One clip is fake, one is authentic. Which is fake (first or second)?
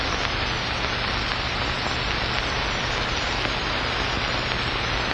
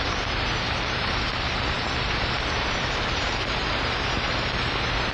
second